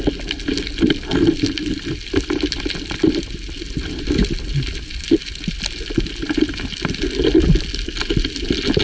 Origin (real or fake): real